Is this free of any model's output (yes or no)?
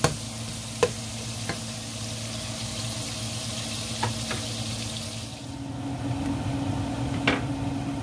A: yes